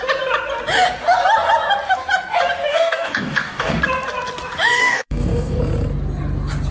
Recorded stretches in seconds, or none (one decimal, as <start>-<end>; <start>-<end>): 0.0-2.7; 3.8-4.8; 5.6-6.7